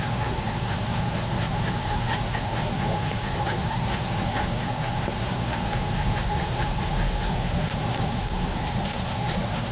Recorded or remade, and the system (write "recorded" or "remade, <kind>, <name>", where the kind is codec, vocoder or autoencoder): remade, codec, SNAC